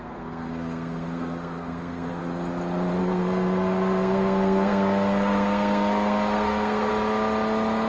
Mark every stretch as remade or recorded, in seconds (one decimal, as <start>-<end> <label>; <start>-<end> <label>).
0.0-2.2 remade; 2.2-3.0 recorded; 3.0-6.9 remade; 6.9-7.9 recorded